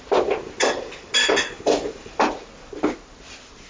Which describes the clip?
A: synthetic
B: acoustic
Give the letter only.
B